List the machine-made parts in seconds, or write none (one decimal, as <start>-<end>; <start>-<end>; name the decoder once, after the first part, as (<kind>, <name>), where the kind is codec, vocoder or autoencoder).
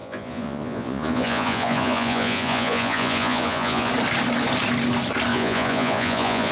0.0-3.9 (vocoder, Vocos); 5.3-6.5